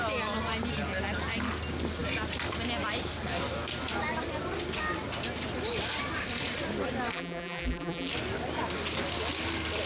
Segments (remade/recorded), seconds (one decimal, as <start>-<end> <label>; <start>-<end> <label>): 0.0-7.1 recorded; 7.1-8.1 remade; 8.1-9.9 recorded